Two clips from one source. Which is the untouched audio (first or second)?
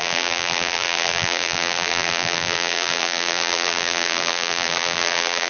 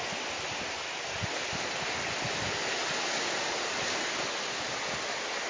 second